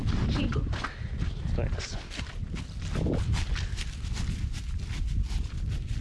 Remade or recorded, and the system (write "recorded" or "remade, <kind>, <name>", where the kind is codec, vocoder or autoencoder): recorded